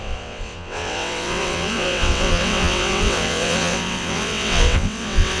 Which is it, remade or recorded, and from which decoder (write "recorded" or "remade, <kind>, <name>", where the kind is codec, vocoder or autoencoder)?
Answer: remade, vocoder, WaveNeXt